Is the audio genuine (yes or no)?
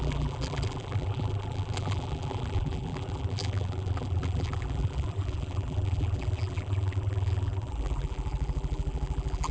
no